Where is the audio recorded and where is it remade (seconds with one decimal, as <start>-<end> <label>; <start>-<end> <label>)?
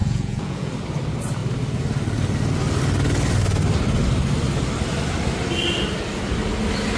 0.0-0.7 remade; 0.7-7.0 recorded